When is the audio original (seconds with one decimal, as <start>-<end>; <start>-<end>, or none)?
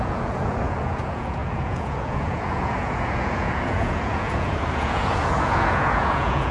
none